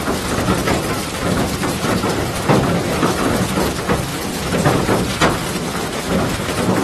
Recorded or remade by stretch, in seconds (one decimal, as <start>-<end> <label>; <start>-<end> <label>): 0.0-1.0 recorded; 1.0-2.2 remade; 2.2-6.8 recorded